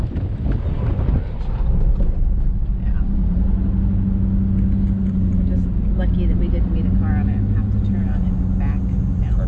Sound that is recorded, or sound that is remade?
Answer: recorded